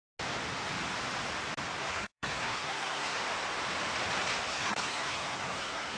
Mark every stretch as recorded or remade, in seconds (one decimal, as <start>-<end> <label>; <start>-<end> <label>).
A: 0.0-1.8 recorded; 1.8-3.2 remade; 3.2-4.5 recorded; 4.5-6.0 remade